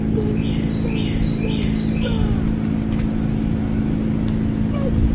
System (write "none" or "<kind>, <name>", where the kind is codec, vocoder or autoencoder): none